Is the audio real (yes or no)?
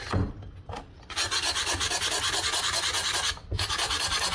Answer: yes